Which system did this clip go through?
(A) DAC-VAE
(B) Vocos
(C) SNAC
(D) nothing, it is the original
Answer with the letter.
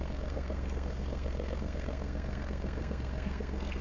C